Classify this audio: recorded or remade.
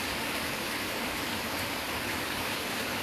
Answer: remade